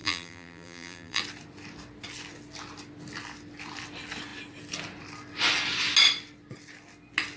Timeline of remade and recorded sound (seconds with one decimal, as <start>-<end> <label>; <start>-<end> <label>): 0.0-1.2 remade; 1.2-7.4 recorded